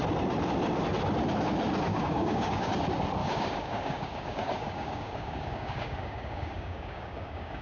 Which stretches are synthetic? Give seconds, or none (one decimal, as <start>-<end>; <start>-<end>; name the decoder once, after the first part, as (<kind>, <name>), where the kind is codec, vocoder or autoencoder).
1.9-2.7 (codec, DAC); 3.2-7.6